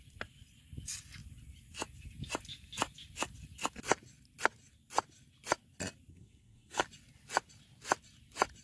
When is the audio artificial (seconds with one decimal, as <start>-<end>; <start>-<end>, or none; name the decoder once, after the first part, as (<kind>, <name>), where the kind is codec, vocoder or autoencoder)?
6.1-6.8 (codec, SNAC)

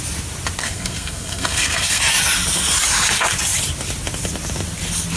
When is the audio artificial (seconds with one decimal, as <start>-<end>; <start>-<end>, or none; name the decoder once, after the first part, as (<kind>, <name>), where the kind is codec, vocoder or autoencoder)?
0.6-2.0 (codec, SNAC)